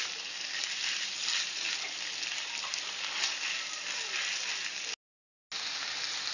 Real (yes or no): yes